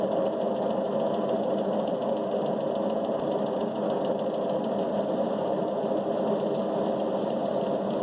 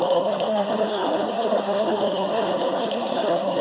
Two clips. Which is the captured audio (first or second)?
first